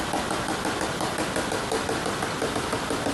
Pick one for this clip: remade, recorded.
recorded